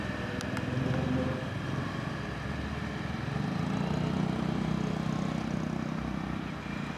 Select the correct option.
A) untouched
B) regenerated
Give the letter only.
A